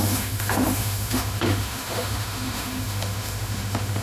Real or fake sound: fake